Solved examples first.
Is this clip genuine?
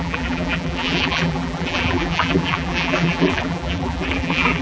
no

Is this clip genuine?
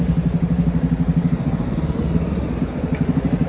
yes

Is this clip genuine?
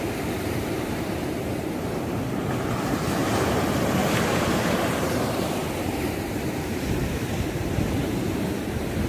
no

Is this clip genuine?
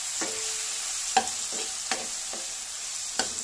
yes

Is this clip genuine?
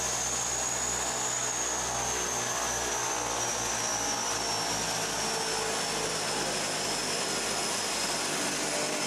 yes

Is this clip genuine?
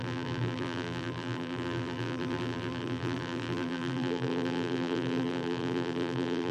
no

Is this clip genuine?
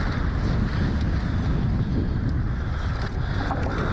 yes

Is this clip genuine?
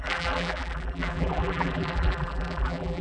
no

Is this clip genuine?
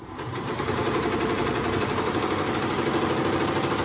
no